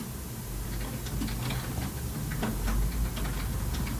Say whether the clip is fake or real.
real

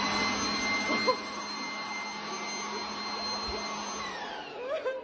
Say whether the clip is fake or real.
real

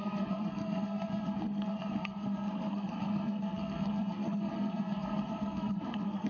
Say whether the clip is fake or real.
fake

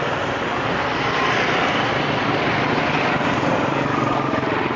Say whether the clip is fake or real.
real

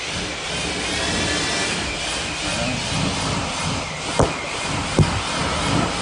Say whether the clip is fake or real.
real